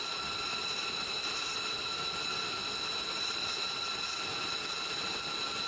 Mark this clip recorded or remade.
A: recorded